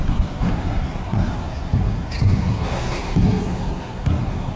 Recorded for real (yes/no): no